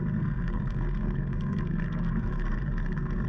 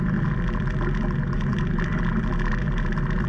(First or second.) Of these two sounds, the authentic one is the second